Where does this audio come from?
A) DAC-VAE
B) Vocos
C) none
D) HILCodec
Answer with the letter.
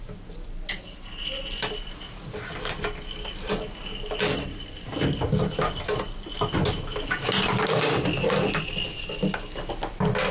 C